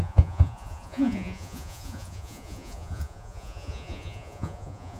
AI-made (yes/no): yes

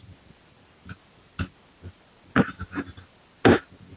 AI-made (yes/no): no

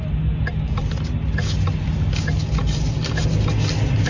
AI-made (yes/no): no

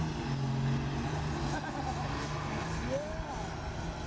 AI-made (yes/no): no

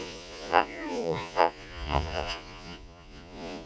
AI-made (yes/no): yes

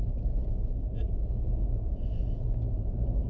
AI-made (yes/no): no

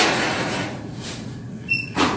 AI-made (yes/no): yes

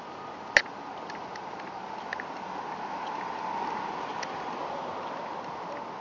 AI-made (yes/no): no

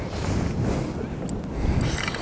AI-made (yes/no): no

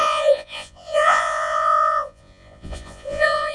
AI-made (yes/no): yes